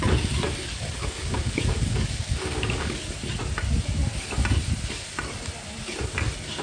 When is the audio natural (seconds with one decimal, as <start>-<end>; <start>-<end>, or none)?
0.0-1.0; 3.1-6.6